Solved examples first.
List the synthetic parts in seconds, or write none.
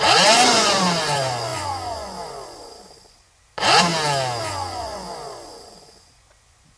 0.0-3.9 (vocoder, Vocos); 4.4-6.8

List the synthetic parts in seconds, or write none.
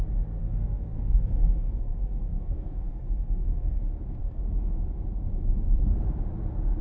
0.4-3.8 (codec, SNAC); 4.2-4.7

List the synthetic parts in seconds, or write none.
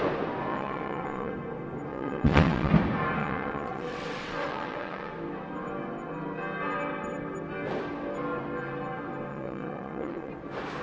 0.5-1.3 (vocoder, WaveNeXt); 1.9-2.7; 3.2-5.1; 9.3-10.3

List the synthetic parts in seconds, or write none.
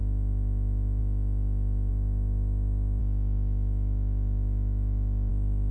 3.0-5.3 (autoencoder, DAC-VAE)